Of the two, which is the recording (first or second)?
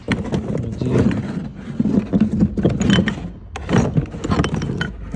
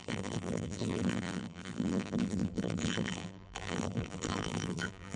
first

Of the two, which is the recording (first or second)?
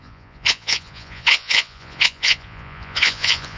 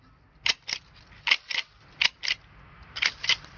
second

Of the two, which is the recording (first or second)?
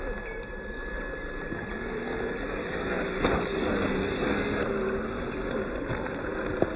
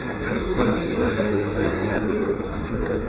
first